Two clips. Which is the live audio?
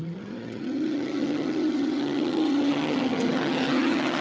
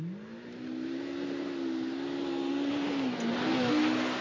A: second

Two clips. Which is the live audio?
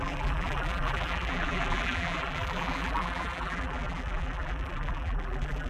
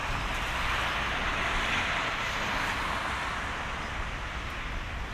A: second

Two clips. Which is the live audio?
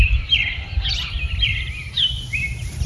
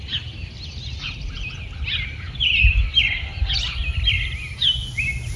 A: second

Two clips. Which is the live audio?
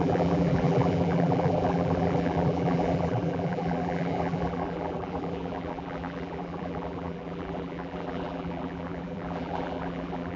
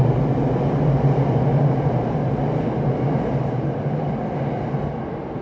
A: second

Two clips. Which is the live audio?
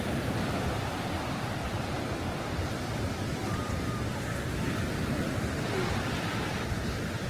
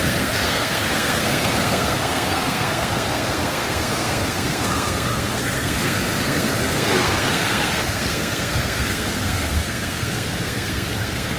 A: first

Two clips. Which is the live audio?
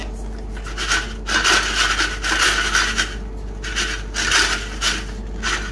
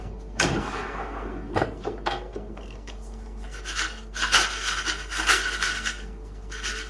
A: first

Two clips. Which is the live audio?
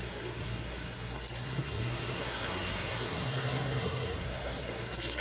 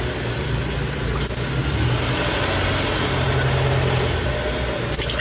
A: second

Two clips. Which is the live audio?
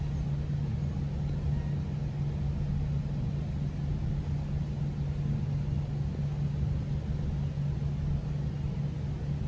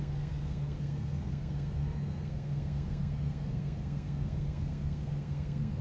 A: first